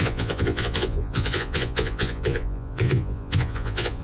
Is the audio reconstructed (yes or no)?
yes